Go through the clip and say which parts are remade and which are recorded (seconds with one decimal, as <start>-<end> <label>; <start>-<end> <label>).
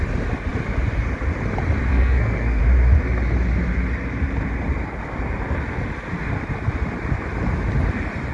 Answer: 0.0-1.9 recorded; 1.9-2.6 remade; 2.6-8.3 recorded